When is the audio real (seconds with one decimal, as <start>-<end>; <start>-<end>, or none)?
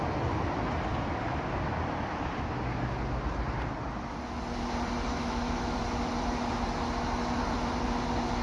0.0-5.1; 5.8-8.4